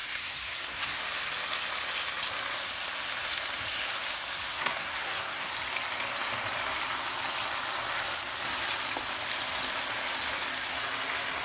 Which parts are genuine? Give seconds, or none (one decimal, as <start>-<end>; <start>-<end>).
1.0-4.5; 5.5-11.4